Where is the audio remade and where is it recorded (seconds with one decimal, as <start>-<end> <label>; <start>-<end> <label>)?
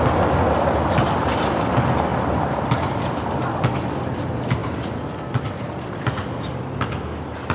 0.0-7.5 recorded